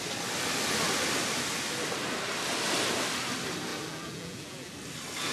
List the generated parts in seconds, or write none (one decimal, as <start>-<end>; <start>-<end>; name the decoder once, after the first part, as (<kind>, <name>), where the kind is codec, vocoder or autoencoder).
3.7-4.7 (vocoder, BigVGAN v2)